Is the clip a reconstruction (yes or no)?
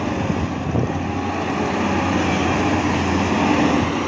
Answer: no